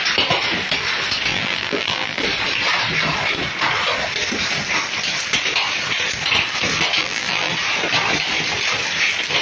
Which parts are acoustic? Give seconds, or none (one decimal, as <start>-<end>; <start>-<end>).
0.0-1.3; 2.2-7.0; 7.5-9.4